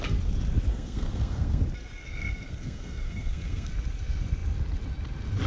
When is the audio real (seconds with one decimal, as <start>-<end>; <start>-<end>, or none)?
0.0-0.7; 1.6-2.0; 3.7-5.5